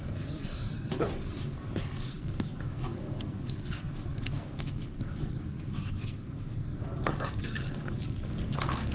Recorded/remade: remade